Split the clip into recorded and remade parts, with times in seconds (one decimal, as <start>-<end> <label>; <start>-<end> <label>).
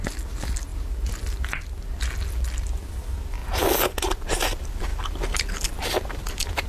0.0-6.7 recorded